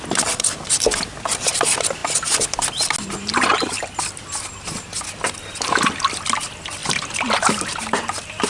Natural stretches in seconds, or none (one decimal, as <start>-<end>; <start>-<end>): 0.0-8.5